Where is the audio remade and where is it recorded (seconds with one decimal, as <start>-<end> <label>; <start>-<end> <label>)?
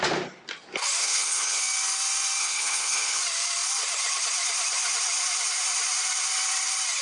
0.0-1.0 recorded; 1.0-1.6 remade; 1.6-2.4 recorded; 2.4-3.2 remade; 3.2-7.0 recorded